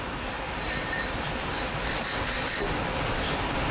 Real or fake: fake